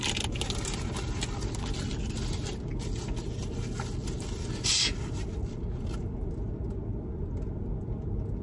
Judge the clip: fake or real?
real